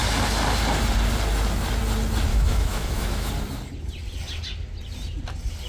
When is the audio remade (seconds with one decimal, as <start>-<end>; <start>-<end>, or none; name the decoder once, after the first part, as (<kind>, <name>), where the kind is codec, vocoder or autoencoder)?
2.3-3.3 (autoencoder, DAC-VAE)